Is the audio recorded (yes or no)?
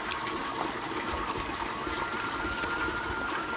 yes